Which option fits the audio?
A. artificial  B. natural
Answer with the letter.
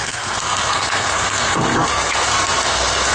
A